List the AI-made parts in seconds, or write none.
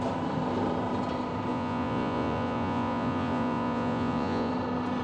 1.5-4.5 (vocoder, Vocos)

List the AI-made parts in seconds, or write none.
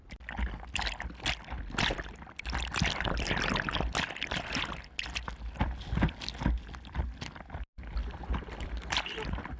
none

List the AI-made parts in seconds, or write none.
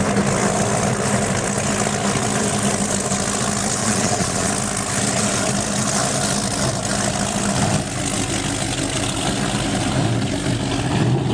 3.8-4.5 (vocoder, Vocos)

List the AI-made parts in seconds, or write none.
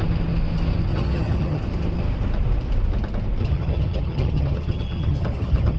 0.9-1.6 (vocoder, HiFi-GAN); 3.4-5.8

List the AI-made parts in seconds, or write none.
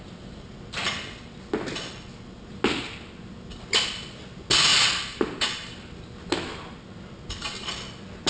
none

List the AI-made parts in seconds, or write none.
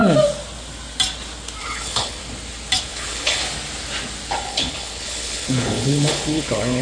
1.6-2.2 (codec, HILCodec); 2.9-3.4; 4.3-6.8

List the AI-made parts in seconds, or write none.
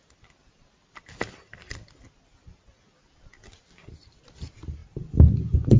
none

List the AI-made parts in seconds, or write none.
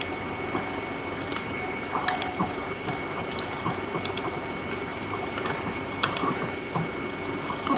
1.3-2.9 (vocoder, BigVGAN v2); 4.9-6.4